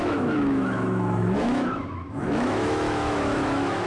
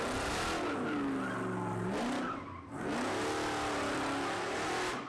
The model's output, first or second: first